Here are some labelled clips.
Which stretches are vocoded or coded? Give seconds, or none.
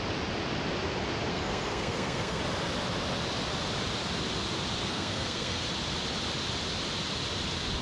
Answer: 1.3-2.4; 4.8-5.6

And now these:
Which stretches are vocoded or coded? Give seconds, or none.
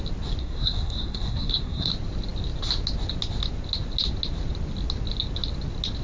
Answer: 0.4-1.9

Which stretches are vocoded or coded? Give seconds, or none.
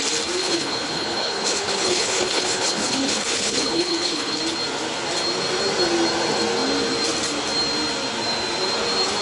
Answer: 0.4-4.4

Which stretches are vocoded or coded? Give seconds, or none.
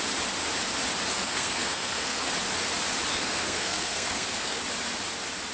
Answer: 1.1-2.3; 3.1-4.6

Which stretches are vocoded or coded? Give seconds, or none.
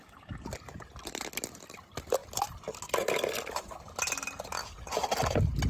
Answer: none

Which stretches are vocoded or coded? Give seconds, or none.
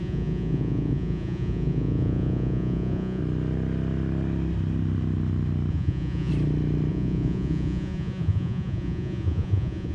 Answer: 0.0-3.2; 5.7-6.3; 6.9-9.9